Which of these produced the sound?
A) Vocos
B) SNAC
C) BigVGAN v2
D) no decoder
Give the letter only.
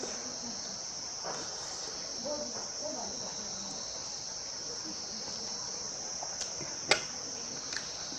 D